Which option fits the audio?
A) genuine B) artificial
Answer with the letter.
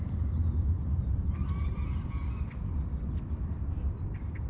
B